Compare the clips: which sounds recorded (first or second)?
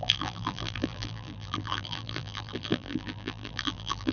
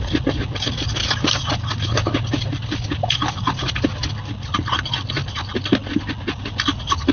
second